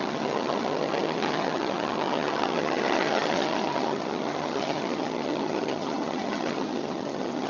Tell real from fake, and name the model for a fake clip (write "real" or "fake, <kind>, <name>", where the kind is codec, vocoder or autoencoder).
fake, vocoder, HiFi-GAN